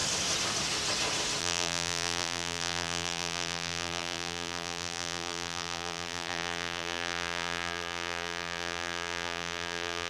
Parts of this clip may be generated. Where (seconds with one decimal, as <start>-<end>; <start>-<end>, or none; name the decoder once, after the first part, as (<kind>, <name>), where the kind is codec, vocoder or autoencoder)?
1.4-10.1 (vocoder, BigVGAN v2)